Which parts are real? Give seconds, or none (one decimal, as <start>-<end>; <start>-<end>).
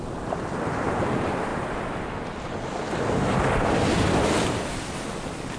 0.0-5.6